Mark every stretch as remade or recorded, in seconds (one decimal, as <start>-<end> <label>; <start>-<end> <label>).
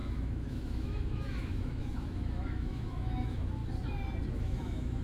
0.0-3.6 remade; 3.6-4.3 recorded; 4.3-5.0 remade